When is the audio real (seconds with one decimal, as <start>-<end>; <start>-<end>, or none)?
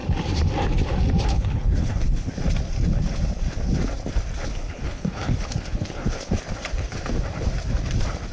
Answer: 0.0-1.3; 2.3-4.5; 6.4-8.3